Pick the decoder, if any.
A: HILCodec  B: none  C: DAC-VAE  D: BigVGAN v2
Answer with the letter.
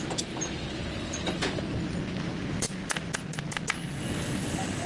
B